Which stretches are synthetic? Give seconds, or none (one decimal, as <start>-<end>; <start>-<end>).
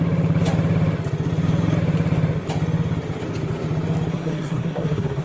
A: 4.1-5.2